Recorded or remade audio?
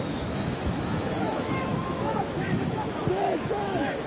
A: remade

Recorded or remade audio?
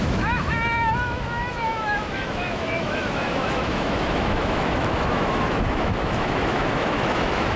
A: remade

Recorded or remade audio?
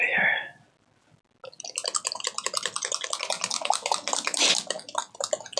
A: recorded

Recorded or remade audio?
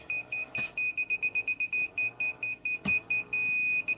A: remade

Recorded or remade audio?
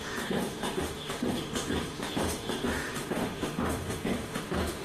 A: remade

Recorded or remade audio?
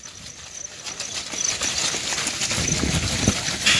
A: recorded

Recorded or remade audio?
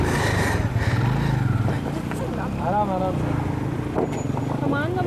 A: recorded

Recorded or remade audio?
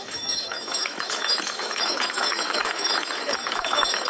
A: remade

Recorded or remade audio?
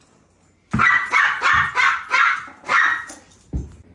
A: recorded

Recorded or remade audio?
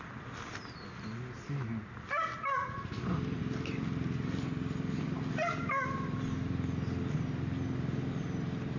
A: recorded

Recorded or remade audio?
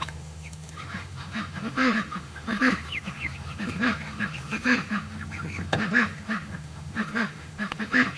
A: remade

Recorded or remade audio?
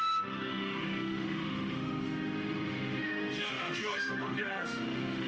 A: remade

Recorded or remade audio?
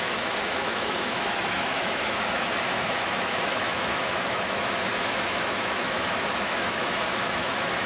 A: remade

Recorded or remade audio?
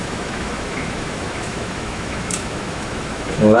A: remade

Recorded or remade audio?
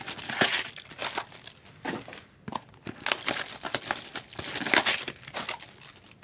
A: recorded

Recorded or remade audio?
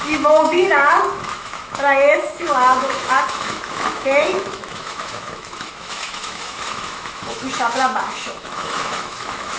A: remade